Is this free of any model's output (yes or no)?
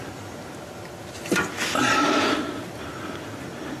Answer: yes